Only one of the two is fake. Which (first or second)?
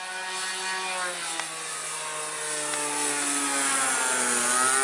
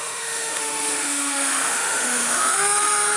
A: second